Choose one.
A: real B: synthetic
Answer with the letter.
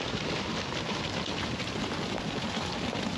A